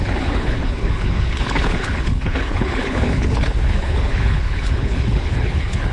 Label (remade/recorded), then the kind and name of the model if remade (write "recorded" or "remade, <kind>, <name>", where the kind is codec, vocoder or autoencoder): remade, codec, HILCodec